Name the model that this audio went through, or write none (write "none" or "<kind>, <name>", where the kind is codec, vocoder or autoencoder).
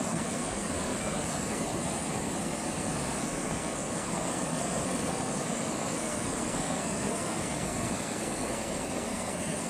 codec, SNAC